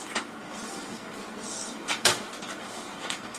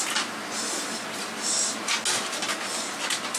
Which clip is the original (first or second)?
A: second